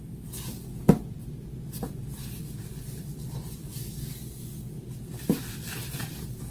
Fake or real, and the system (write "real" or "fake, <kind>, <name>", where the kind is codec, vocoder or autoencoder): fake, vocoder, BigVGAN v2